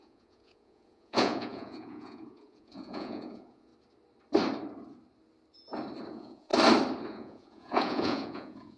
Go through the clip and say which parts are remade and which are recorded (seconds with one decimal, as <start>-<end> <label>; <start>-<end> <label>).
0.0-3.7 remade; 3.7-6.1 recorded; 6.1-6.5 remade; 6.5-7.1 recorded; 7.1-8.8 remade